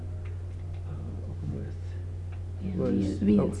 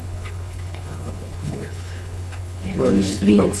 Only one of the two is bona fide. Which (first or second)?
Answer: first